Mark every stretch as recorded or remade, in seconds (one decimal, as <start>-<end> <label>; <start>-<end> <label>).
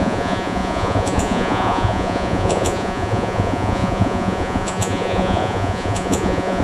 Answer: 0.0-6.6 remade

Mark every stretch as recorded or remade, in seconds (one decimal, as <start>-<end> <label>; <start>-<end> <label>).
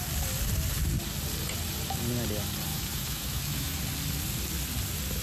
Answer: 0.0-2.7 recorded; 2.7-3.8 remade; 3.8-5.2 recorded